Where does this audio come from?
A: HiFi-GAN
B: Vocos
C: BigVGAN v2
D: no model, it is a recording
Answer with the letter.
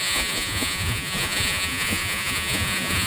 B